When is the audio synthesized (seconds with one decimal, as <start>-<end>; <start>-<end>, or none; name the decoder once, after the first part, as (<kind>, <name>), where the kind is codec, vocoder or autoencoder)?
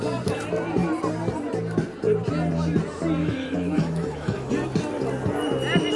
3.2-4.5 (autoencoder, DAC-VAE)